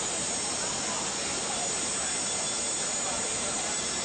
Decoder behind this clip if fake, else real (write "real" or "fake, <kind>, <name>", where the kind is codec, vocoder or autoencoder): real